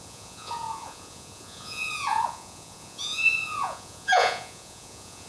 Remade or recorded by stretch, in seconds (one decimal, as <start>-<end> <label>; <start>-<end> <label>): 0.0-5.3 remade